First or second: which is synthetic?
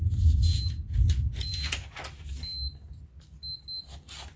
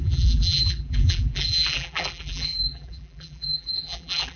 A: second